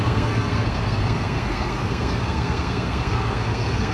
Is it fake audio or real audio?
fake